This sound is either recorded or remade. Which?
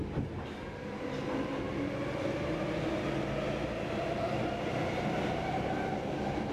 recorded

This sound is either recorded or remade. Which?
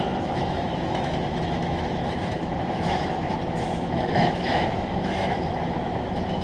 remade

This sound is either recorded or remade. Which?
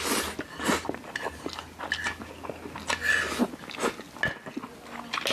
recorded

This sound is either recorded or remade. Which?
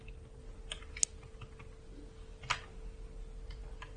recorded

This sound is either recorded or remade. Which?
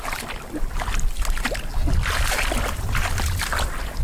recorded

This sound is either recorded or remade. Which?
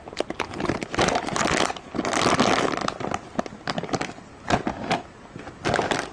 recorded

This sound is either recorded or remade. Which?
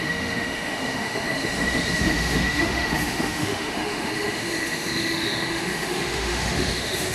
remade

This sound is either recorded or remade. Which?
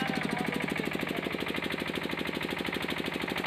recorded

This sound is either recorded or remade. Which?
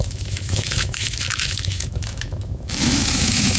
remade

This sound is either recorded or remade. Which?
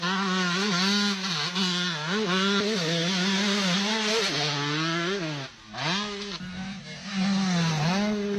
recorded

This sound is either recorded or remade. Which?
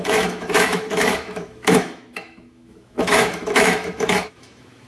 remade